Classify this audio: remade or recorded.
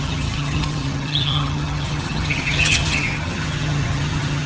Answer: remade